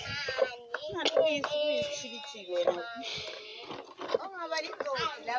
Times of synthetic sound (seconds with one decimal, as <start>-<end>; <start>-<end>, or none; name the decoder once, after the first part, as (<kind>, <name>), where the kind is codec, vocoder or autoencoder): none